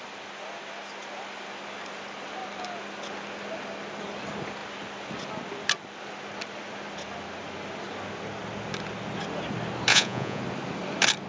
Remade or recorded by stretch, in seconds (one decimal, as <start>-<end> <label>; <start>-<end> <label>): 0.0-9.9 recorded; 9.9-10.4 remade; 10.4-11.3 recorded